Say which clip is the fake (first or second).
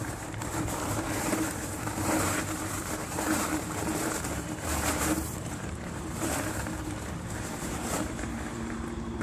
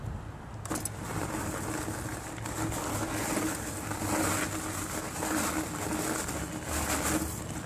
first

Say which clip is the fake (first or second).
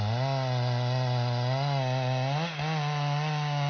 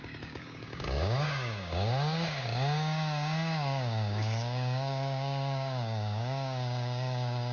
second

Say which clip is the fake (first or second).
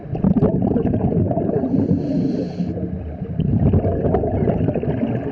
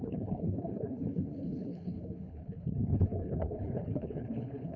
second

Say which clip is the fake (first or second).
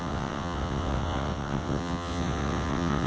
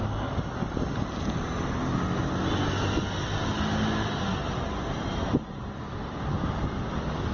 first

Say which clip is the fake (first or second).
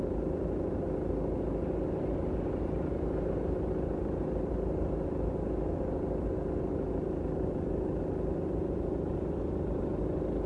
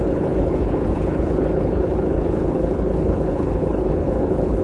second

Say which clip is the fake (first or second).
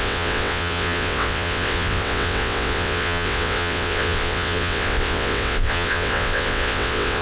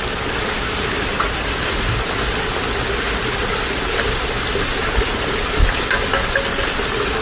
first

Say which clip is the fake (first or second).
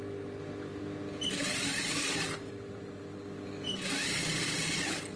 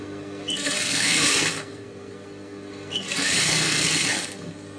second